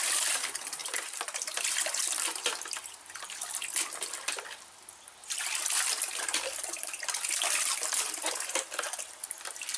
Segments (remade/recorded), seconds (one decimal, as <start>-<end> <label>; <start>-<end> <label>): 0.0-9.8 recorded